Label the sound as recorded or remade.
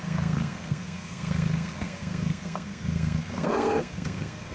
remade